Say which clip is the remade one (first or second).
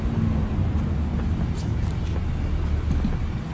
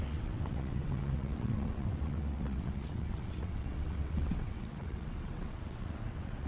second